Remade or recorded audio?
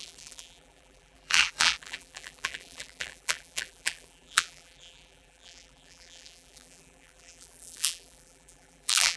remade